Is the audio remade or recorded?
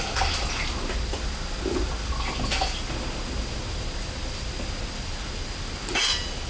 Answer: recorded